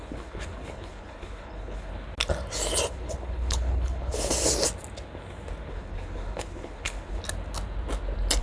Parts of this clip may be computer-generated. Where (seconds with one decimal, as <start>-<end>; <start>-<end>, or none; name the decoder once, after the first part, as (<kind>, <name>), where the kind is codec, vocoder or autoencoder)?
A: 0.0-1.9 (codec, HILCodec); 2.9-4.3; 5.7-7.2